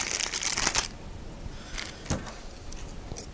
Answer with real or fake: real